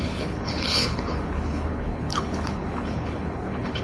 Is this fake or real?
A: fake